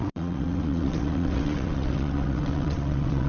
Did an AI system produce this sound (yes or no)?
yes